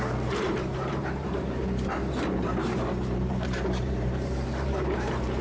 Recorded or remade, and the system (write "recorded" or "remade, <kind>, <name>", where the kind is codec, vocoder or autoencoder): remade, vocoder, BigVGAN v2